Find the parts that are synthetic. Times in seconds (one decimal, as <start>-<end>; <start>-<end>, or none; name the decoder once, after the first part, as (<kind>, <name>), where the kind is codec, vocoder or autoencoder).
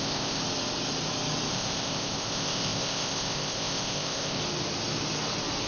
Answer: 0.0-0.4 (codec, ZipCodec); 1.5-4.4